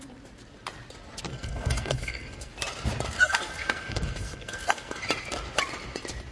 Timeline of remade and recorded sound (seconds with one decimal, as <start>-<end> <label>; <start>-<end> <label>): 0.0-1.3 recorded; 1.3-2.5 remade; 2.5-3.2 recorded; 3.2-5.0 remade; 5.0-6.3 recorded